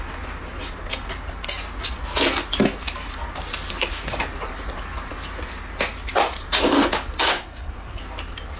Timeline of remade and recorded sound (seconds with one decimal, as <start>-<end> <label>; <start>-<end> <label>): 0.0-7.3 recorded; 7.3-8.0 remade; 8.0-8.6 recorded